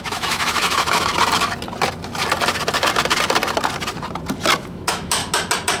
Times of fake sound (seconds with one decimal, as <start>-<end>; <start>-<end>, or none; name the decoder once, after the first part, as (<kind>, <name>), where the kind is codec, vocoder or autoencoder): 0.0-1.1 (autoencoder, DAC-VAE); 4.6-5.2